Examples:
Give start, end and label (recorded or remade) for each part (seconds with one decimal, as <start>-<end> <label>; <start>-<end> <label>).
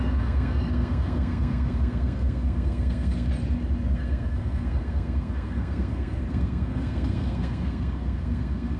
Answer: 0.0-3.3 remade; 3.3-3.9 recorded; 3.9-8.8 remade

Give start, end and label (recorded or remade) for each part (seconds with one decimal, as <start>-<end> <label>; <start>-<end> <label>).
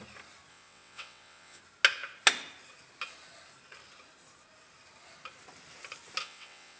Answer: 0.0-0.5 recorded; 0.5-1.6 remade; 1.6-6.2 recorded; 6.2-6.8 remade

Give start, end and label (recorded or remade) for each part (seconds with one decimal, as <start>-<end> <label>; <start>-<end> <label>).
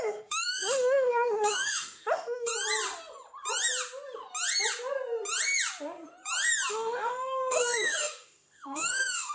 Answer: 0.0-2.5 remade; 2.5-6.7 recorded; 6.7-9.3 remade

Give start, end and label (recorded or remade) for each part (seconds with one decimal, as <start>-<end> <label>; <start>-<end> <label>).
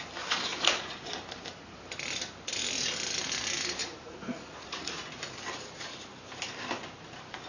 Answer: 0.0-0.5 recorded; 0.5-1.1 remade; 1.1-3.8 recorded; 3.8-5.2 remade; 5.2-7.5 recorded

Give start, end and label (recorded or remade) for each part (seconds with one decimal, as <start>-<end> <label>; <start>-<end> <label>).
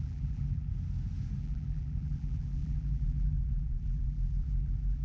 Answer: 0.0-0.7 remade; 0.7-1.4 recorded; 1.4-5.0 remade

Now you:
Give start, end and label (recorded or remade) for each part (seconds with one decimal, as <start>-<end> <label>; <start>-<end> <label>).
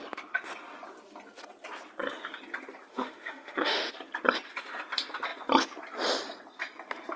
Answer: 0.0-2.9 recorded; 2.9-3.9 remade; 3.9-7.2 recorded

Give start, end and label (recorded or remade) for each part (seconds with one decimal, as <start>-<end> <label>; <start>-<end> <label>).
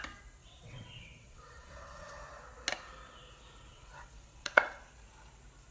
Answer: 0.0-0.4 recorded; 0.4-2.2 remade; 2.2-3.7 recorded; 3.7-4.8 remade; 4.8-5.7 recorded